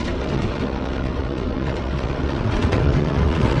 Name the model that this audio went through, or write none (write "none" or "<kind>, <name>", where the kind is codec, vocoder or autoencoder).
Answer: vocoder, WaveNeXt